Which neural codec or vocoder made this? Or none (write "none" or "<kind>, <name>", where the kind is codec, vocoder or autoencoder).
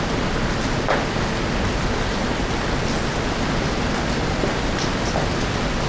none